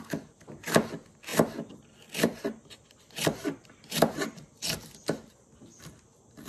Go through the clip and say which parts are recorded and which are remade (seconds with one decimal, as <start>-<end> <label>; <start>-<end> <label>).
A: 0.0-1.3 recorded; 1.3-4.5 remade; 4.5-6.5 recorded